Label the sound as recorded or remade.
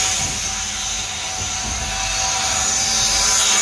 recorded